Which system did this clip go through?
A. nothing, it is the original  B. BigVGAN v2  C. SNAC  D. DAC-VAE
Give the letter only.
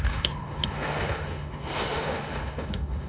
D